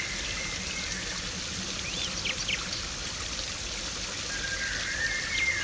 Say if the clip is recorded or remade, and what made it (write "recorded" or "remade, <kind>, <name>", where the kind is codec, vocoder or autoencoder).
recorded